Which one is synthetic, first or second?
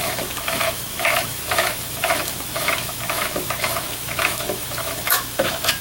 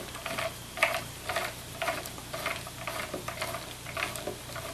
first